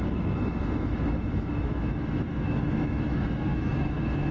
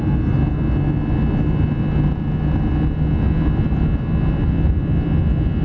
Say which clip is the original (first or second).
second